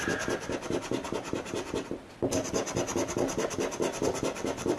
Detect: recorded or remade recorded